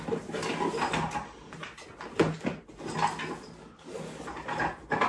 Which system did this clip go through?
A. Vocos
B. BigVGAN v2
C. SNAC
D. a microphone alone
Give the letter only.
D